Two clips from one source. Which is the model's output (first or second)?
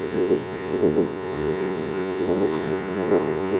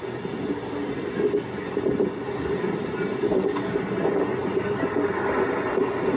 first